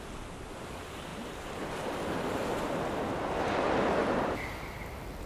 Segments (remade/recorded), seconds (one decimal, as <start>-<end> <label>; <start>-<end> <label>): 0.0-1.1 recorded; 1.1-2.8 remade; 2.8-5.3 recorded